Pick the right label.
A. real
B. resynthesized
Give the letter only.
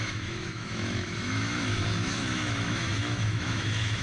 B